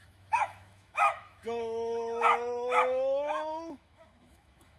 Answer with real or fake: fake